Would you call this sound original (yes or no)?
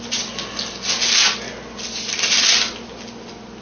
yes